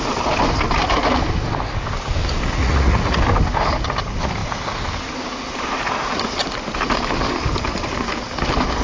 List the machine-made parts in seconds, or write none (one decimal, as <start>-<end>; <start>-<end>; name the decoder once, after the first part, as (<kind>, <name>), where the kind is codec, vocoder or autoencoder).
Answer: 2.6-3.2 (vocoder, Vocos)